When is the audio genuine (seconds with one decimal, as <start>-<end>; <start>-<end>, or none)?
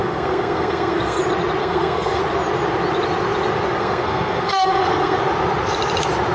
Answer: 1.2-1.6; 2.2-3.8; 5.2-6.3